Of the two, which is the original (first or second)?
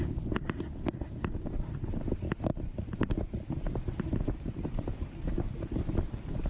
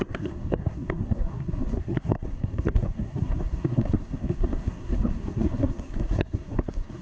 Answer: first